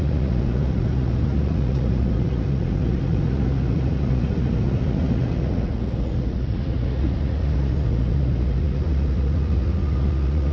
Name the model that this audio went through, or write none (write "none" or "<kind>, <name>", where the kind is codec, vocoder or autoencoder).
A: vocoder, Vocos